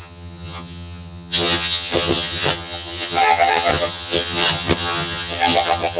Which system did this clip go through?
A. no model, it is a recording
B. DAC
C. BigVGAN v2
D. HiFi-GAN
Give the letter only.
D